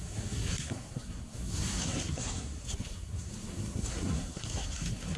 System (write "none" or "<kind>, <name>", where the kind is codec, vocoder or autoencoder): codec, SNAC